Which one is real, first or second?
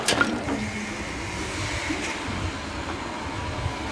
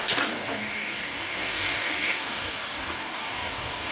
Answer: first